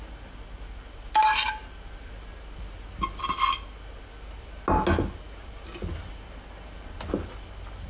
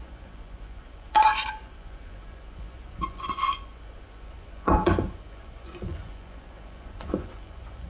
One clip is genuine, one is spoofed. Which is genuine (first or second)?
first